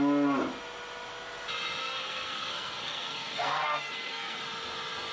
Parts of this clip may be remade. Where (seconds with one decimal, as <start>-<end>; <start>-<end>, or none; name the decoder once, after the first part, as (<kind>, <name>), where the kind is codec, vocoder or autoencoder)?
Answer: 1.8-4.4 (codec, SNAC)